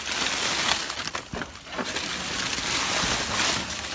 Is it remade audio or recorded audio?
recorded